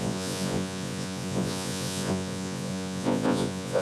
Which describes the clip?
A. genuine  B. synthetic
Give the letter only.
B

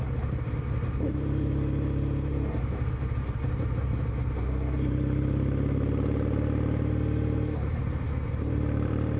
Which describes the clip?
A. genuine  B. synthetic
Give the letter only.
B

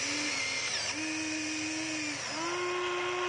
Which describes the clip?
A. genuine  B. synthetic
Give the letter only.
A